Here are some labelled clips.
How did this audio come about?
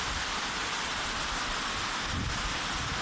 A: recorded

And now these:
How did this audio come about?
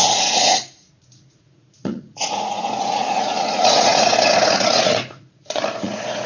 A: remade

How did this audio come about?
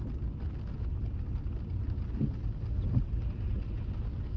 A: recorded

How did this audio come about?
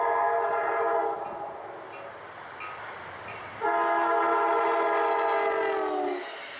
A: recorded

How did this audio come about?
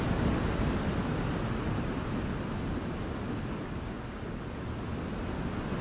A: recorded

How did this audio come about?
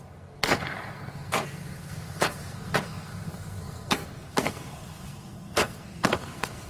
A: remade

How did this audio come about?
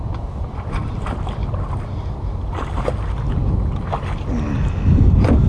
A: recorded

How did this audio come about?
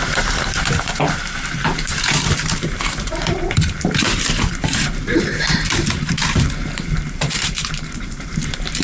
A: remade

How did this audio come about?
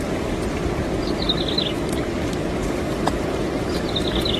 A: recorded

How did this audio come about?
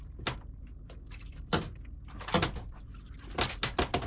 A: recorded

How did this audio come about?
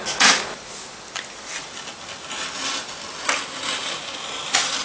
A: recorded